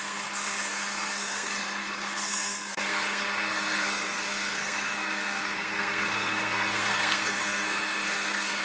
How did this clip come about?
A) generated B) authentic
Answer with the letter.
A